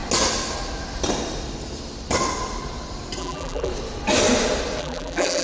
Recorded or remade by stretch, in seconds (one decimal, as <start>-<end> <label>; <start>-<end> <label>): 0.0-3.2 recorded; 3.2-3.7 remade; 3.7-4.8 recorded; 4.8-5.4 remade

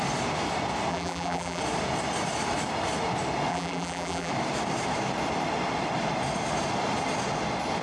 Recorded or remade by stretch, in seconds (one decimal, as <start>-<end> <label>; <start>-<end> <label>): 0.0-0.9 recorded; 0.9-1.6 remade; 1.6-3.5 recorded; 3.5-4.3 remade; 4.3-7.8 recorded

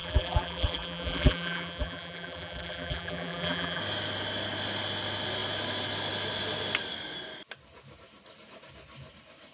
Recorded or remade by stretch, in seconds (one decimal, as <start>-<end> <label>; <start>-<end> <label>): 0.0-3.8 remade; 3.8-9.5 recorded

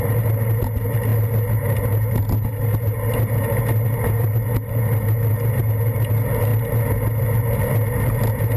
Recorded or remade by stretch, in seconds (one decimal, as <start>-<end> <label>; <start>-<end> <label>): 0.0-8.6 recorded